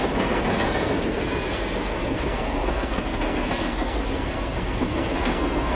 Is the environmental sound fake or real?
fake